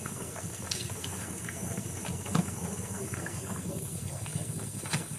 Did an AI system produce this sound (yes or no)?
yes